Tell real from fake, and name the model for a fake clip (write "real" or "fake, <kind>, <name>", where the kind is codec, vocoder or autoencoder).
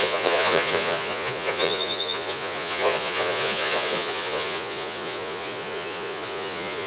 fake, vocoder, Vocos